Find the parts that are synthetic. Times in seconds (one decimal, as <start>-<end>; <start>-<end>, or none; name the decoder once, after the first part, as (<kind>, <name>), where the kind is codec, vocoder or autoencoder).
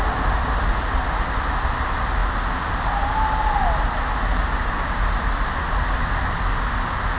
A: none